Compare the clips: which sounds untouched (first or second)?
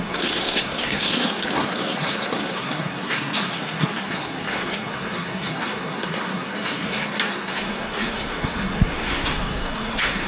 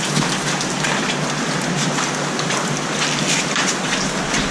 second